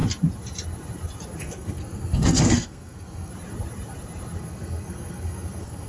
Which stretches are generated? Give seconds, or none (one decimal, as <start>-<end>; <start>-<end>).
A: 1.4-3.3; 4.4-5.9